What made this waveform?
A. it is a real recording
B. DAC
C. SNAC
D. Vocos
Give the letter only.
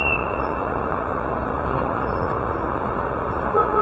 D